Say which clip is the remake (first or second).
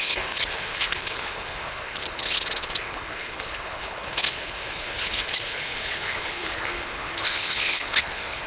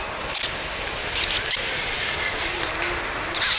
first